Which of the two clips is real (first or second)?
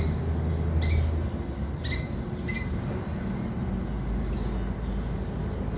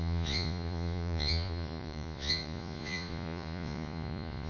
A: first